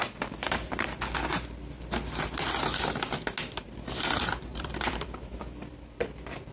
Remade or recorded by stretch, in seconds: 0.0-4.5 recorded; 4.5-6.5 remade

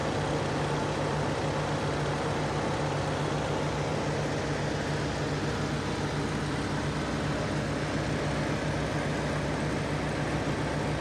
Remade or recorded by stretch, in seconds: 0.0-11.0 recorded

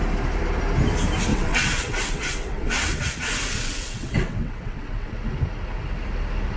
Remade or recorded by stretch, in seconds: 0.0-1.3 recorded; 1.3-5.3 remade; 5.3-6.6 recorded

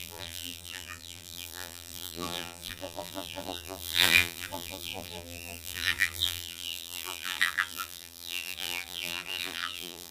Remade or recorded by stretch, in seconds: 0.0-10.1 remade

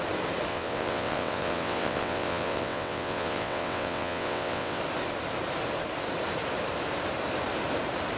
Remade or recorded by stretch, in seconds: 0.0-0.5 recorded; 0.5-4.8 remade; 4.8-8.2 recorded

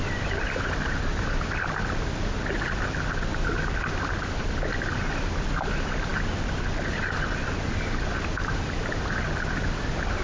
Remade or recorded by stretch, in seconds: 0.0-10.2 recorded

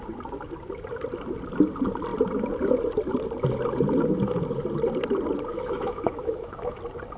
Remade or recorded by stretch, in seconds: 0.0-5.5 recorded; 5.5-6.8 remade; 6.8-7.2 recorded

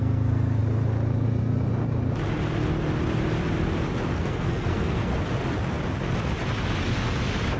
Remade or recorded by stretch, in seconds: 0.0-0.6 remade; 0.6-4.1 recorded; 4.1-5.1 remade; 5.1-7.6 recorded